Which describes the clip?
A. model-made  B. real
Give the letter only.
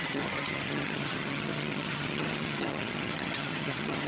A